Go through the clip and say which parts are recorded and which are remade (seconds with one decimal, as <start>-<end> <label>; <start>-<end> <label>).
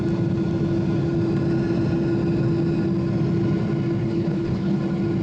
0.0-4.0 recorded; 4.0-4.8 remade; 4.8-5.2 recorded